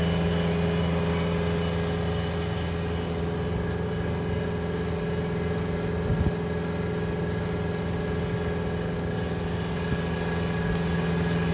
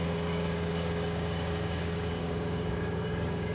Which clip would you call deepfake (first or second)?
second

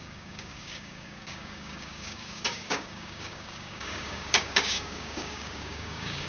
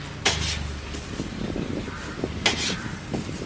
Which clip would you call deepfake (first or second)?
first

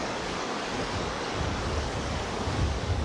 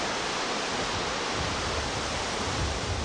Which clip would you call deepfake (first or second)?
first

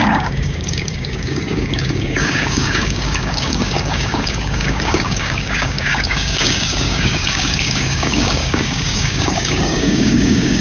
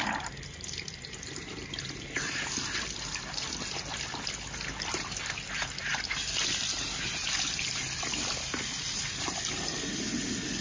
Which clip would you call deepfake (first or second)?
first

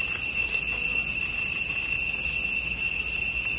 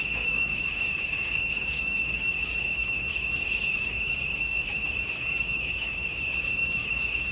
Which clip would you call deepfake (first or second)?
second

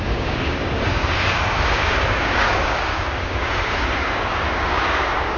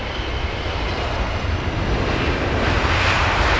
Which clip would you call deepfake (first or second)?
first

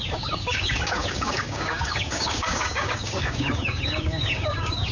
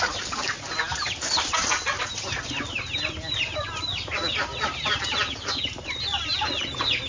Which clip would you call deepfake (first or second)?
first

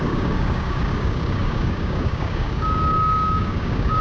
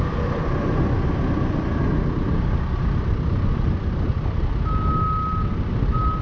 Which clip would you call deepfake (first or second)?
first